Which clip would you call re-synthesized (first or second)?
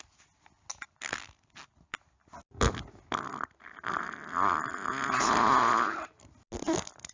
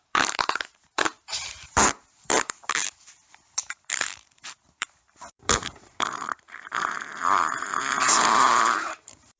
second